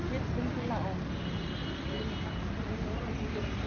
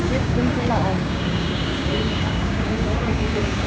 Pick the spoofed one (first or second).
second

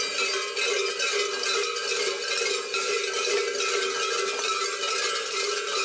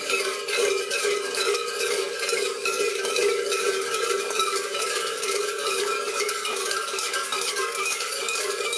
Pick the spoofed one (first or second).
second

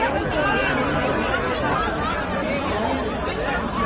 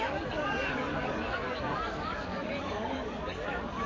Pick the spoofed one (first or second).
second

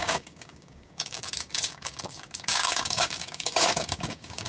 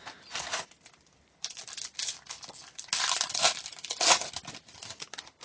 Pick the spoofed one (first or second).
first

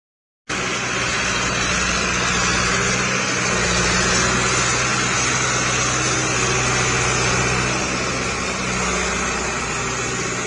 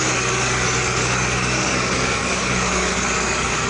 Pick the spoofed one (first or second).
second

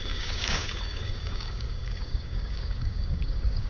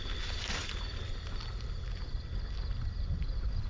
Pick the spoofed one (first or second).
first